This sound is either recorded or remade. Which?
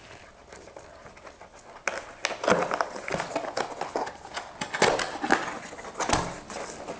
recorded